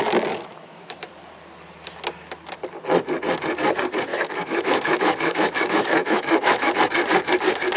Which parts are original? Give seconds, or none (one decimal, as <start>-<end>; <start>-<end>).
0.0-0.5; 1.1-4.1; 6.7-7.8